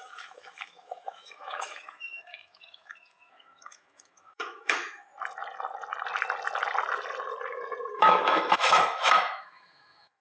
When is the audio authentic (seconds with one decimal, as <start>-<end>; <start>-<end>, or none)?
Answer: 5.1-7.9